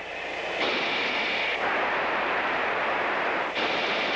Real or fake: real